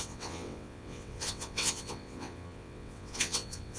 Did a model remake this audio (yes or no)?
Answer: yes